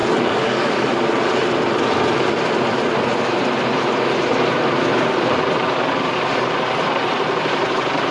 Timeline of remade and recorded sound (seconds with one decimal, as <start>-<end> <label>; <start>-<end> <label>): 0.0-0.9 remade; 0.9-8.1 recorded